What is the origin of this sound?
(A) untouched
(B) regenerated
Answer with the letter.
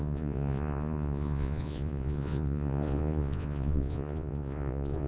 B